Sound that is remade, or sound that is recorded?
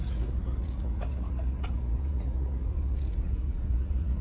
remade